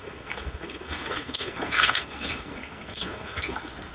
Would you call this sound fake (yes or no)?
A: yes